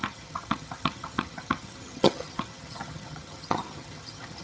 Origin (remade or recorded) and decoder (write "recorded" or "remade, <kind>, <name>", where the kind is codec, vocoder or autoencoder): remade, vocoder, HiFi-GAN